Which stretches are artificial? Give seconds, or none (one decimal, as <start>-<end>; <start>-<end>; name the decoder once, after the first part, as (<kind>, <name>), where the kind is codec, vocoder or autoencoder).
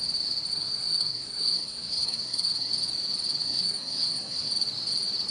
0.5-2.7 (codec, SNAC); 3.4-4.5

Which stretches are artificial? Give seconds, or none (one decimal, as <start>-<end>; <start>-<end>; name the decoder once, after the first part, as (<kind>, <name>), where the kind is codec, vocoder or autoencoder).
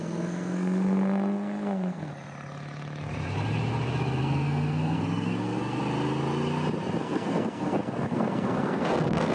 0.0-2.1 (codec, SNAC); 4.2-5.8; 7.0-9.3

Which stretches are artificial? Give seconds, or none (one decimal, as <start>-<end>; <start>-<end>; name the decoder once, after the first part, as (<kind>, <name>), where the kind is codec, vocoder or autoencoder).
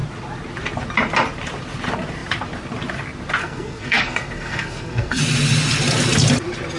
3.4-5.2 (codec, SNAC)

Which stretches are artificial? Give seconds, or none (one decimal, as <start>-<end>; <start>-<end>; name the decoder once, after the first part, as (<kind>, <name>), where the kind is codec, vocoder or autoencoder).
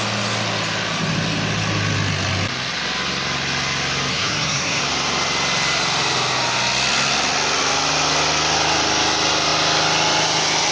4.1-4.8 (codec, SNAC)